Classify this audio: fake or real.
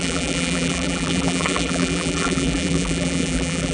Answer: fake